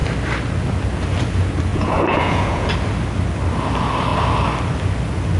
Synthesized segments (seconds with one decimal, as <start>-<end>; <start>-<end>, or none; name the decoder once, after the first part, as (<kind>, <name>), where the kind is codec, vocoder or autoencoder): 1.7-2.7 (vocoder, Vocos)

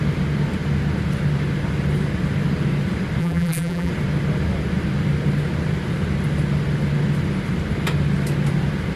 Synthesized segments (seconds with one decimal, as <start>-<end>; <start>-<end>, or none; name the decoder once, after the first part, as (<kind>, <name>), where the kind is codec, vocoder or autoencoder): 3.2-3.9 (vocoder, BigVGAN v2)

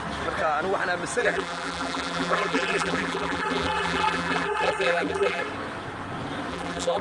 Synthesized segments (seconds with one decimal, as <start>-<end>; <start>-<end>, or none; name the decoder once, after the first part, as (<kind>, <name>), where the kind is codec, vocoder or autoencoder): 1.2-5.4 (vocoder, BigVGAN v2); 6.5-7.0

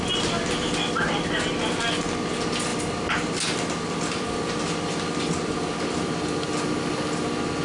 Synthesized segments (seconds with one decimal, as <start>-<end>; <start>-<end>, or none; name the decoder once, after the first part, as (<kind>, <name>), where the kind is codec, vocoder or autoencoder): none